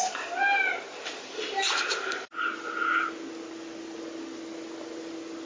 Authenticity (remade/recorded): recorded